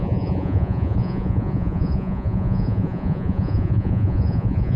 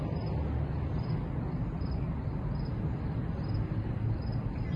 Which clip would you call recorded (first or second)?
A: second